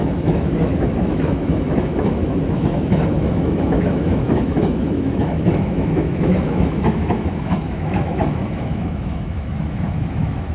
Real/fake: fake